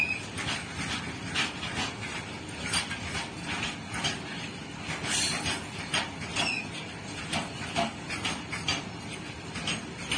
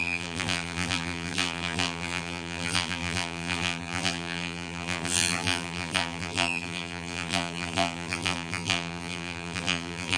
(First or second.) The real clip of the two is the first